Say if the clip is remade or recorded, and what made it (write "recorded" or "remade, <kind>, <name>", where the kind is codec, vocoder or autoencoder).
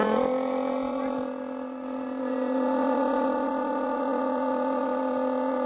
remade, vocoder, Vocos